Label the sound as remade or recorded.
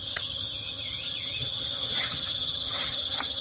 remade